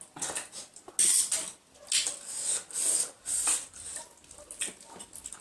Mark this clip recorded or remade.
recorded